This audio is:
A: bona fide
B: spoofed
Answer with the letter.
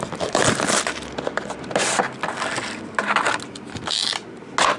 A